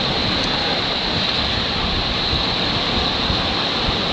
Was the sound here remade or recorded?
recorded